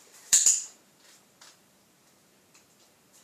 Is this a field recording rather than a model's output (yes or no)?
no